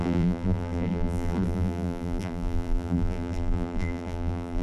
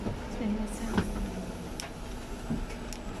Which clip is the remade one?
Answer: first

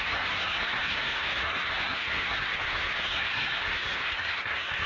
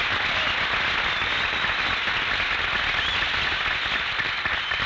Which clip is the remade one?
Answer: first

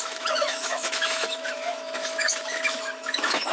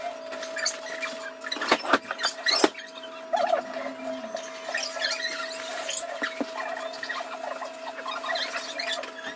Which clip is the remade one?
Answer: first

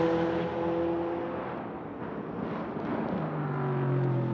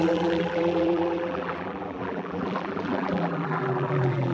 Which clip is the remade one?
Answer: second